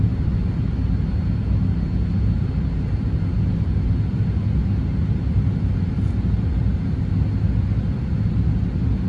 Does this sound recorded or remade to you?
recorded